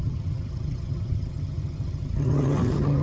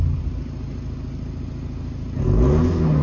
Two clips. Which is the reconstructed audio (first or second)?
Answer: first